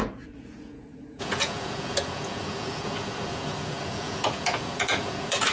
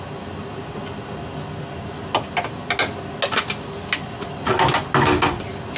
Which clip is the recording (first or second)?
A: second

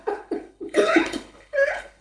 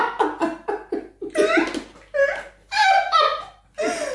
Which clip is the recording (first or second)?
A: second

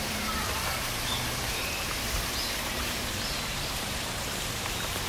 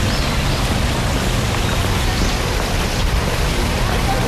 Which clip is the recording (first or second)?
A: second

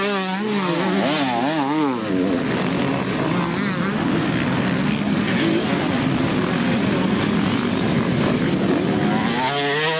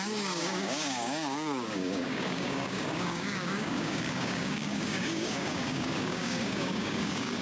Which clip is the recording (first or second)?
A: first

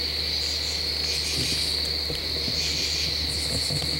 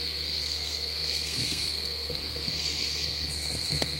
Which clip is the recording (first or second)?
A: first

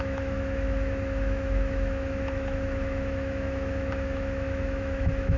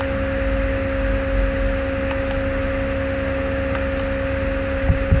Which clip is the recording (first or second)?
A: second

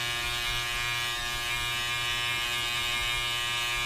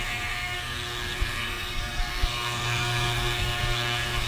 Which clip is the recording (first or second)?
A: first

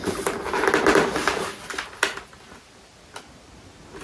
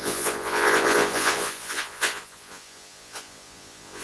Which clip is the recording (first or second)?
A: first